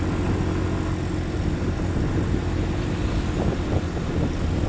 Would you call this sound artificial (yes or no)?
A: no